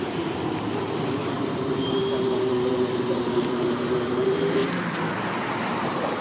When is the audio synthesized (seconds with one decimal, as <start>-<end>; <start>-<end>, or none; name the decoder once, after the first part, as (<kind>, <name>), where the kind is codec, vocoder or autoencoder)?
0.0-4.6 (vocoder, BigVGAN v2); 5.6-6.2

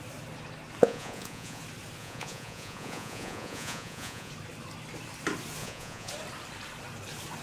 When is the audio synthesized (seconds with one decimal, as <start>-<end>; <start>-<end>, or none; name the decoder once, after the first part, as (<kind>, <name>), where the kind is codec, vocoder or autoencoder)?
0.8-1.6 (vocoder, Vocos); 2.0-4.3; 5.6-6.1

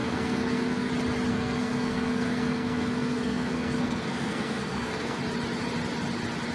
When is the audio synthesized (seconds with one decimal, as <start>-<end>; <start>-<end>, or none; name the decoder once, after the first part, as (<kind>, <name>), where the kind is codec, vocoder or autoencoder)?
0.0-0.9 (codec, SNAC); 1.3-5.2

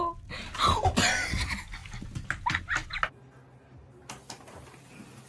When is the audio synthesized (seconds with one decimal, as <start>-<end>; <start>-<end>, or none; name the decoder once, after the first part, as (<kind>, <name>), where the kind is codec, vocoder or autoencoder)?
none